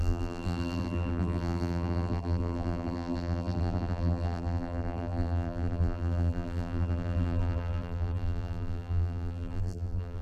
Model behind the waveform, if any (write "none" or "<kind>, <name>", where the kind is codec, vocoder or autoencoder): vocoder, BigVGAN v2